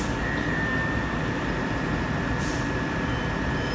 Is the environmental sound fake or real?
fake